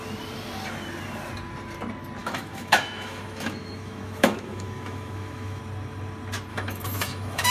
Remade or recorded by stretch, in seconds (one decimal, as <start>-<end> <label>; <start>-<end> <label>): 0.0-2.2 recorded; 2.2-5.6 remade; 5.6-6.5 recorded; 6.5-7.5 remade